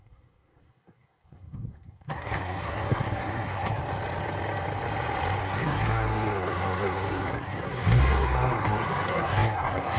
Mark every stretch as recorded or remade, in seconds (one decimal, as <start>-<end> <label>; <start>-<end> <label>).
0.0-3.8 remade; 3.8-5.4 recorded; 5.4-10.0 remade